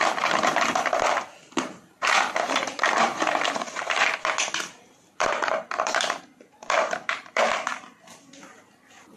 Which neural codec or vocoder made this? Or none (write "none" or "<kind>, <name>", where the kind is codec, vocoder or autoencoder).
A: vocoder, BigVGAN v2